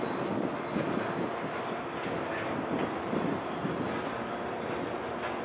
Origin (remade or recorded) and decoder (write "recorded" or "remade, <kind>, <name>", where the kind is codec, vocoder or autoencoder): recorded